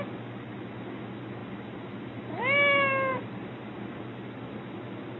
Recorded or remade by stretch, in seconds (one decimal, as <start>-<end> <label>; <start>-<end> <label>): 0.0-5.2 recorded

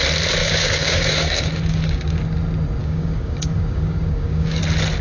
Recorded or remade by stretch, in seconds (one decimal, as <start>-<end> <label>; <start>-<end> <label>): 0.0-0.4 recorded; 0.4-2.2 remade; 2.2-2.8 recorded; 2.8-4.6 remade; 4.6-5.0 recorded

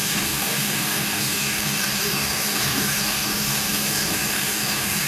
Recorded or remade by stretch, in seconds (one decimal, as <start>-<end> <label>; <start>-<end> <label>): 0.0-5.1 remade

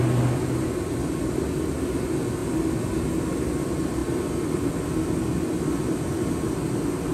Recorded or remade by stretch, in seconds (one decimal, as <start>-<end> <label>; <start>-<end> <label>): 0.0-7.1 recorded

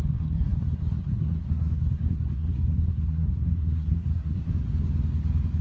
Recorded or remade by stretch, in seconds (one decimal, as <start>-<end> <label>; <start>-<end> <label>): 0.0-4.5 remade; 4.5-5.6 recorded